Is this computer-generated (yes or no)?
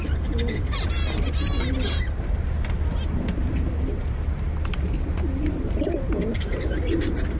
no